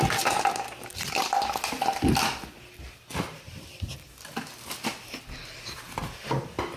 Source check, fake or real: real